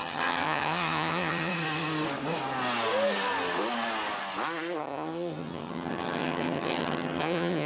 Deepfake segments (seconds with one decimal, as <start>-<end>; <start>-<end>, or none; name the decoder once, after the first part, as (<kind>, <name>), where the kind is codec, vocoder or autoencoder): 0.0-1.5 (vocoder, HiFi-GAN); 4.8-7.7